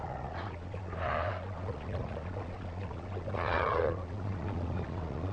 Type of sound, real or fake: fake